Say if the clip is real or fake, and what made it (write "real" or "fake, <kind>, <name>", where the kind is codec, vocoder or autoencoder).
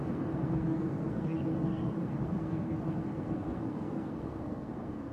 fake, codec, SNAC